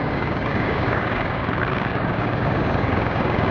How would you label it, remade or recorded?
remade